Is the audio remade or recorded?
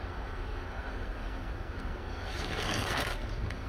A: remade